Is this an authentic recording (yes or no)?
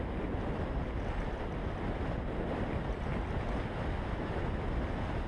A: yes